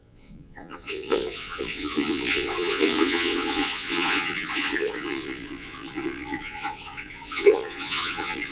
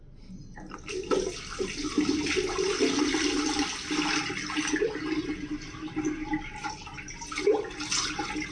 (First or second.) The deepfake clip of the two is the first